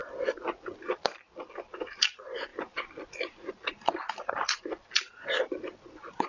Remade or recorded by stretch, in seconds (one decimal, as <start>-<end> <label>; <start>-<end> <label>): 0.0-6.3 recorded